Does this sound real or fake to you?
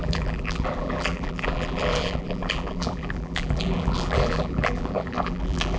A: fake